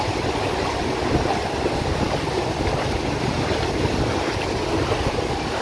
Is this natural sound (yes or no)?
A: yes